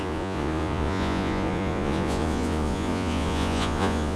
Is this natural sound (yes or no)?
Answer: no